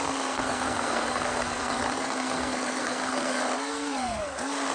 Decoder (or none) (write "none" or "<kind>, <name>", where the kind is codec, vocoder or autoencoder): codec, SNAC